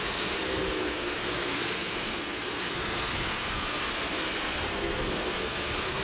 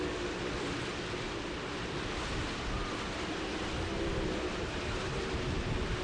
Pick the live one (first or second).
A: second